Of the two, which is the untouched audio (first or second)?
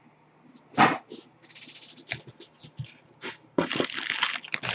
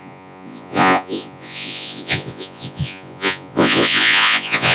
first